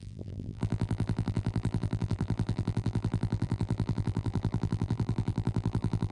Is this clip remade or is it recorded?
remade